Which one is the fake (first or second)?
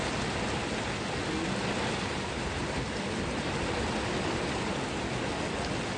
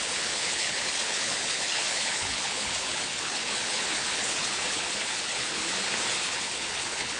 second